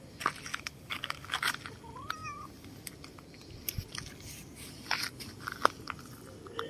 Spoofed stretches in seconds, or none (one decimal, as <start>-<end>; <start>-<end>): 0.5-1.5